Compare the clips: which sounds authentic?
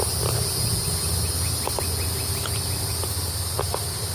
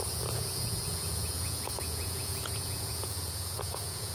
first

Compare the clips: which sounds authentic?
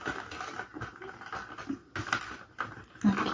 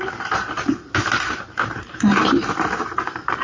first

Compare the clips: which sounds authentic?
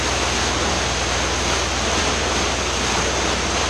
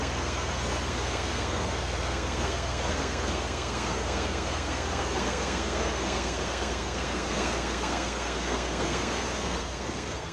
first